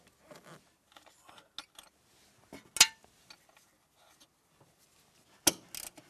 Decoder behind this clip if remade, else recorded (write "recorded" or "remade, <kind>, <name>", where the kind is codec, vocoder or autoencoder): recorded